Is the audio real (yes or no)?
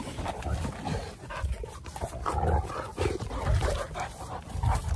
yes